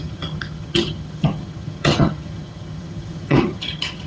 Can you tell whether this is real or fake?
fake